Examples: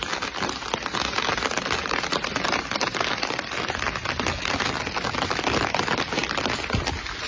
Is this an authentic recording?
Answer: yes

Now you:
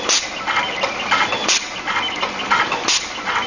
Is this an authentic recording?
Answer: no